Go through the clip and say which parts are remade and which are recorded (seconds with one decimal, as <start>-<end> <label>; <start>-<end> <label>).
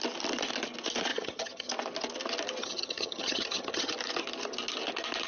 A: 0.0-1.1 recorded; 1.1-1.7 remade; 1.7-2.6 recorded; 2.6-3.9 remade; 3.9-5.3 recorded